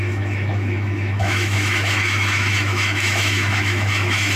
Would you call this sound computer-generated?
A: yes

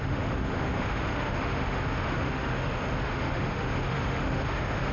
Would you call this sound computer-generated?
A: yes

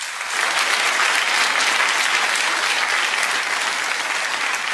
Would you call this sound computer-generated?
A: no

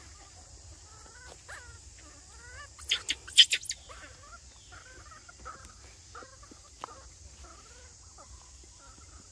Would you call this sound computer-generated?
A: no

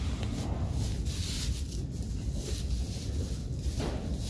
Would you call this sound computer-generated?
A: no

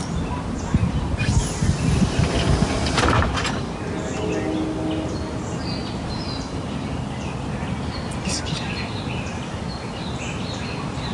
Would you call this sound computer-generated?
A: no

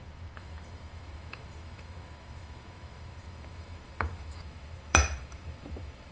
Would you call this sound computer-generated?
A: yes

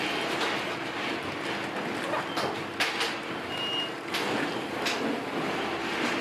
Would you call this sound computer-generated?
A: no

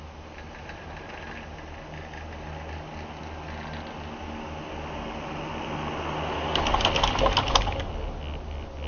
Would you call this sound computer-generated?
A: no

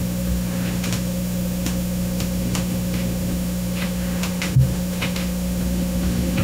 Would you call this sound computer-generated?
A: yes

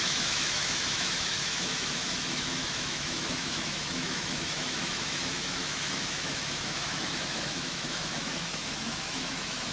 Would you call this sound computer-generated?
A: yes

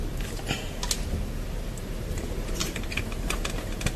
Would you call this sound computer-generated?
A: no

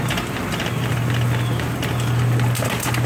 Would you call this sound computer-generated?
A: no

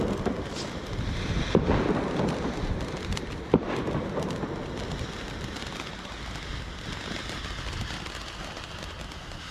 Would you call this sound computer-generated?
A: no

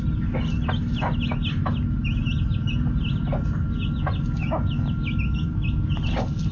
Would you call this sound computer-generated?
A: no